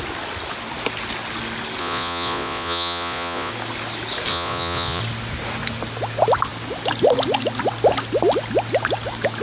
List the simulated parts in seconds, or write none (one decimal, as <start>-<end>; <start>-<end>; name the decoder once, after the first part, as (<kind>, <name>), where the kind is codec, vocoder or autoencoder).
1.8-3.5 (vocoder, Vocos); 4.3-5.0